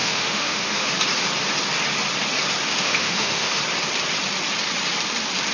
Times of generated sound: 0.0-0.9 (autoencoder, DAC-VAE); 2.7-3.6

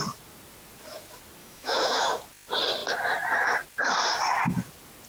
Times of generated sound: 1.4-2.2 (autoencoder, DAC-VAE)

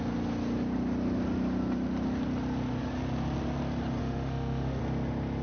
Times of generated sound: 4.0-4.8 (autoencoder, DAC-VAE)

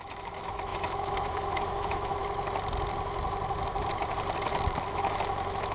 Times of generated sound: 0.0-2.2 (autoencoder, DAC-VAE); 4.9-5.7

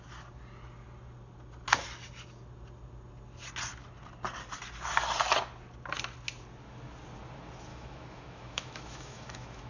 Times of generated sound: 7.7-9.7 (autoencoder, DAC-VAE)

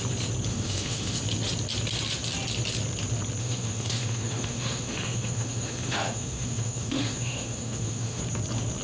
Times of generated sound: 0.5-1.2 (autoencoder, DAC-VAE); 3.4-8.2